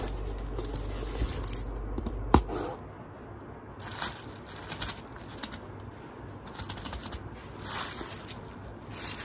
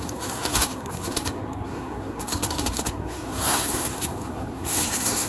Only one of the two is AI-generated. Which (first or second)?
second